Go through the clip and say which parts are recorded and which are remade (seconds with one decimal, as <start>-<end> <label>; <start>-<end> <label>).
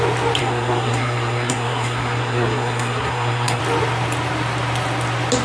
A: 0.0-0.4 recorded; 0.4-3.6 remade; 3.6-5.4 recorded